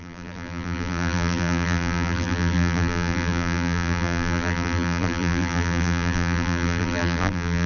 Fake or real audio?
fake